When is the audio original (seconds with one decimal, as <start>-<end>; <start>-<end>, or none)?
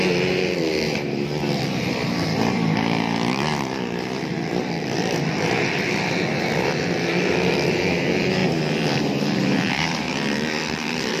none